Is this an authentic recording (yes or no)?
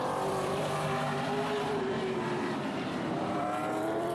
no